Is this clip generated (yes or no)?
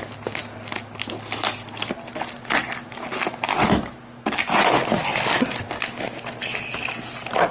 no